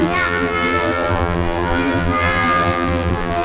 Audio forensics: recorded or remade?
remade